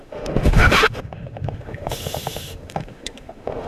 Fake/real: fake